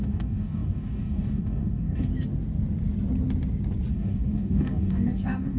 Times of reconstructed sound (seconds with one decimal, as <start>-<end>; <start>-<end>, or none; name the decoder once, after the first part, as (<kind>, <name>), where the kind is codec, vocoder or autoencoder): 0.0-2.1 (codec, DAC); 3.9-5.6